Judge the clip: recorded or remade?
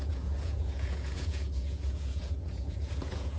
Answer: remade